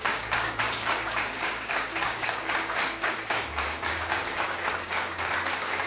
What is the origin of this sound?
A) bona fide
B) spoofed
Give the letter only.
B